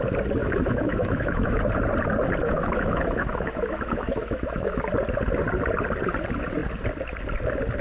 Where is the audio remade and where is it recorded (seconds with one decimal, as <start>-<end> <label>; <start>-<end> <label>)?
0.0-0.4 recorded; 0.4-1.6 remade; 1.6-2.4 recorded; 2.4-4.8 remade; 4.8-7.8 recorded